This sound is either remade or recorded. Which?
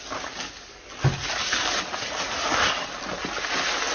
recorded